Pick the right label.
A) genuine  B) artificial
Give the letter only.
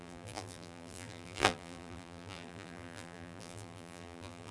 B